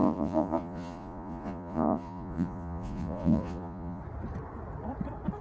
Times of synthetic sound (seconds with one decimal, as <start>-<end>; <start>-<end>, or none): 0.0-4.0